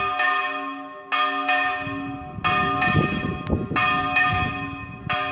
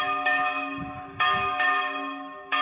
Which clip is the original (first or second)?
first